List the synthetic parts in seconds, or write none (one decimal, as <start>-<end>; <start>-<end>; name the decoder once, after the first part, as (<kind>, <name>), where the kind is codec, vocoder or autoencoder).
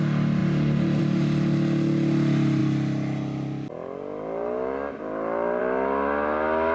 none